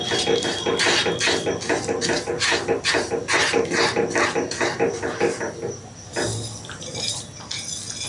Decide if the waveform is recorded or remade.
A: recorded